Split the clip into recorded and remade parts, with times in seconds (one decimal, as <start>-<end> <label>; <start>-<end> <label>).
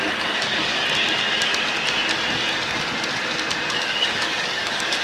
0.0-0.8 remade; 0.8-3.7 recorded; 3.7-5.0 remade